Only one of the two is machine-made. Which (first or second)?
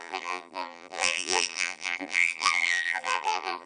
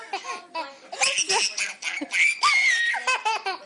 first